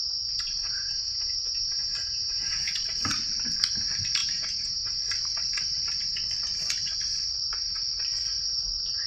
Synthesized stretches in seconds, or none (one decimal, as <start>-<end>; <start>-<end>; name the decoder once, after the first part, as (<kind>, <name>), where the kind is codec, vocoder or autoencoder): 0.7-2.7 (vocoder, Vocos); 4.2-5.0